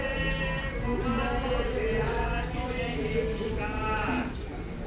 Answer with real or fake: real